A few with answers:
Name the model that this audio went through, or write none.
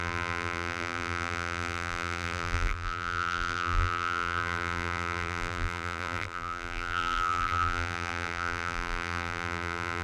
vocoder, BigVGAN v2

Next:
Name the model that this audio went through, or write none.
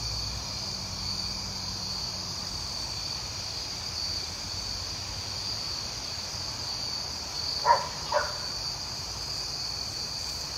none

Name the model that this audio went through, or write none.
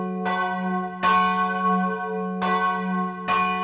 none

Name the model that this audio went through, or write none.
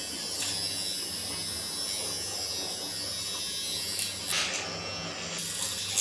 none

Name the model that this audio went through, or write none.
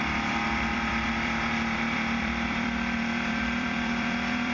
vocoder, BigVGAN v2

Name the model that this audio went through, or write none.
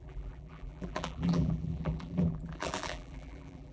vocoder, BigVGAN v2